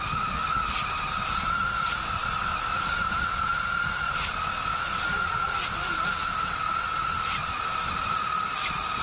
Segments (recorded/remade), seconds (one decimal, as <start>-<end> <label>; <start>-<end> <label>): 0.0-9.0 recorded